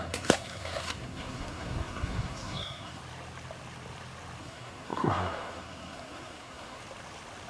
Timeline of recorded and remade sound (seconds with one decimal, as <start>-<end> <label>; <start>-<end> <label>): 0.0-3.0 remade; 3.0-4.4 recorded; 4.4-6.8 remade; 6.8-7.5 recorded